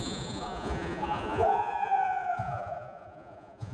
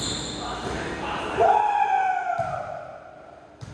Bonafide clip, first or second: second